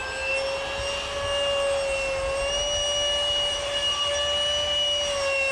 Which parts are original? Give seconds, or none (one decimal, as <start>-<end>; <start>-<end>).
0.0-3.5; 4.1-5.5

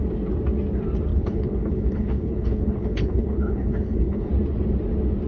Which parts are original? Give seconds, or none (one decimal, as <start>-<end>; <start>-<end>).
0.0-1.1; 4.3-5.3

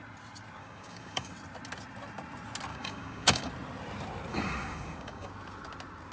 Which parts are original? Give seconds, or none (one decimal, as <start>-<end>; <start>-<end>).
0.0-0.6; 1.3-2.7; 3.5-4.3; 5.3-6.1